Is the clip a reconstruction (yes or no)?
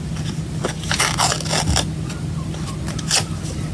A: no